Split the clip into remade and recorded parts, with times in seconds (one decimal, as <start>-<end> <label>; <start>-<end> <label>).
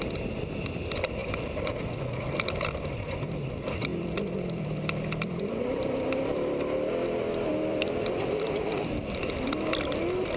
0.0-1.2 recorded; 1.2-2.7 remade; 2.7-3.9 recorded; 3.9-6.5 remade; 6.5-7.5 recorded; 7.5-9.6 remade; 9.6-10.4 recorded